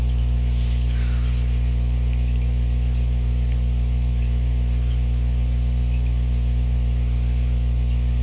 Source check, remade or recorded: remade